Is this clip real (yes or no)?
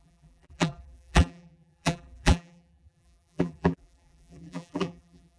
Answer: no